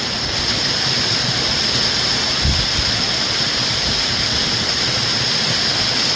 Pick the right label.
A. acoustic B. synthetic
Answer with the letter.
A